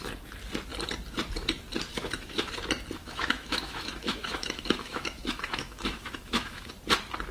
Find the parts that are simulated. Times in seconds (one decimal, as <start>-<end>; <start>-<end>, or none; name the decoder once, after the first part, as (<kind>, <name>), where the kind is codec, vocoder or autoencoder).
1.9-2.5 (autoencoder, DAC-VAE); 3.0-6.7